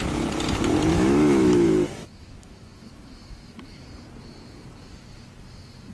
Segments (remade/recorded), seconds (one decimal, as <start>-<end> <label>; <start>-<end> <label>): 0.0-0.9 recorded; 0.9-3.8 remade; 3.8-5.9 recorded